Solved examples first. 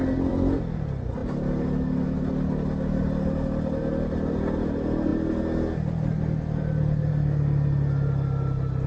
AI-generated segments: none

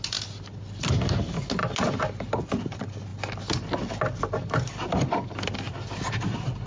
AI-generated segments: none